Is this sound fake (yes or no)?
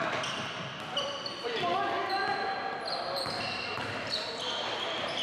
no